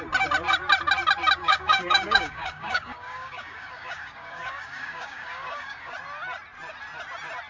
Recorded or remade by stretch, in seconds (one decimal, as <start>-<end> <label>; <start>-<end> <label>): 0.0-1.4 recorded; 1.4-5.9 remade; 5.9-7.5 recorded